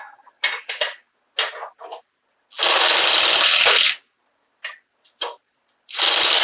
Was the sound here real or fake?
real